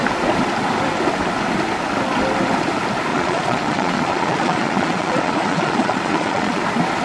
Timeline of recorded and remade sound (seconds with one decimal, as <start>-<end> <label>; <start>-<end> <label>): 0.0-3.1 recorded; 3.1-6.6 remade; 6.6-7.0 recorded

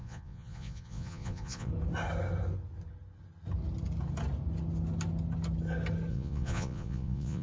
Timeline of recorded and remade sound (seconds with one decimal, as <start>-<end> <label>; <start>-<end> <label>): 0.0-1.7 remade; 1.7-6.1 recorded; 6.1-7.4 remade

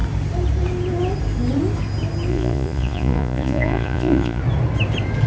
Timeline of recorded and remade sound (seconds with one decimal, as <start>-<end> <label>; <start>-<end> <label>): 0.0-2.3 recorded; 2.3-4.4 remade; 4.4-5.3 recorded